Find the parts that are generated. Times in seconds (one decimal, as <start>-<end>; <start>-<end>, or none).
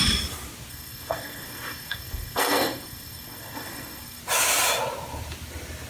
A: 0.7-4.2